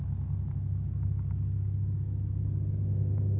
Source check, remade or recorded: recorded